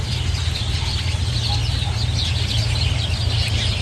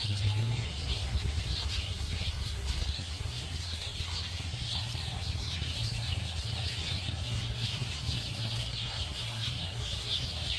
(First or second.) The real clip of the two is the first